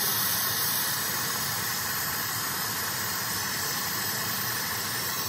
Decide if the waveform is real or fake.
fake